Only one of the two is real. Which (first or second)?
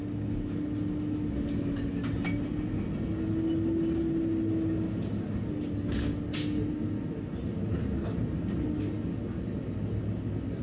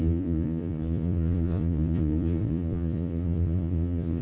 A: first